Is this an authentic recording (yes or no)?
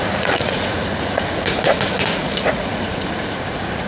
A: no